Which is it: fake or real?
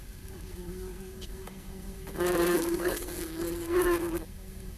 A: fake